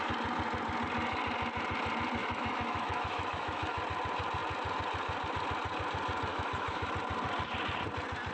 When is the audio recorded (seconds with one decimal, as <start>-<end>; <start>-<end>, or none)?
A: 0.0-2.2; 3.8-6.3; 6.9-8.3